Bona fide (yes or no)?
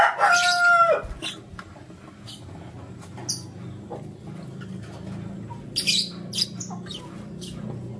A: yes